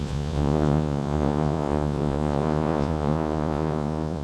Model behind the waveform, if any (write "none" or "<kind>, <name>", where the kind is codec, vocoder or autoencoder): vocoder, Vocos